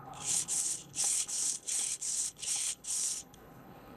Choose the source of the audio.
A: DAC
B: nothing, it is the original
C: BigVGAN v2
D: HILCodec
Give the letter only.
D